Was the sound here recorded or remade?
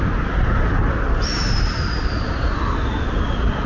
recorded